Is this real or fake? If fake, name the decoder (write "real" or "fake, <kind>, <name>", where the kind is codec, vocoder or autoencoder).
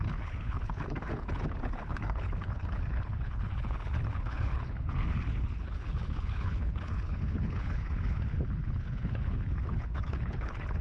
fake, codec, HILCodec